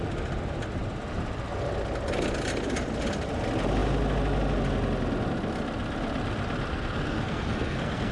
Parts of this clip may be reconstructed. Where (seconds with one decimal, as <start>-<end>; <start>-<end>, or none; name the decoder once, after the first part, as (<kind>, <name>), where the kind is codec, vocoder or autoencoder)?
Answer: 6.7-8.1 (codec, SNAC)